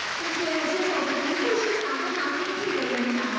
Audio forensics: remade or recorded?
remade